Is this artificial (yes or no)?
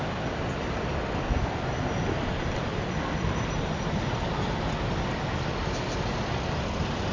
no